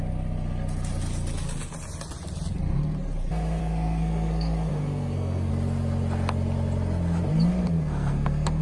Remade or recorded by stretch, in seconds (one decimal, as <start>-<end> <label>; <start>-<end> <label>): 0.0-3.6 recorded; 3.6-5.5 remade; 5.5-7.5 recorded; 7.5-8.6 remade